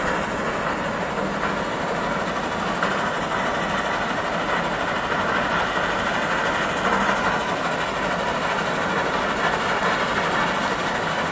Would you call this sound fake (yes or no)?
no